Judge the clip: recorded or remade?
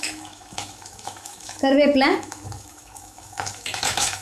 remade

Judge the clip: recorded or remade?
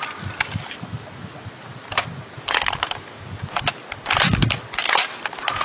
recorded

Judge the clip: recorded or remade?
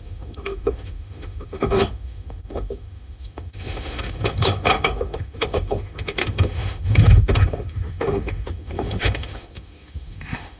remade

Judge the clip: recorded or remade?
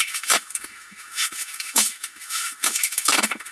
remade